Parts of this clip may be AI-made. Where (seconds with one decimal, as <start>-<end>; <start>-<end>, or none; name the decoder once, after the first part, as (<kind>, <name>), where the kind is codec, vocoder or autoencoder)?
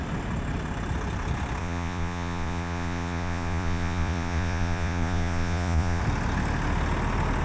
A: 1.6-6.0 (vocoder, Vocos)